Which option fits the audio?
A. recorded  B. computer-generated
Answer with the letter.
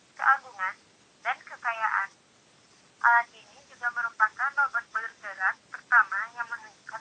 A